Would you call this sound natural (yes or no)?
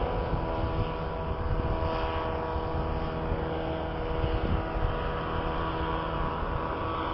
yes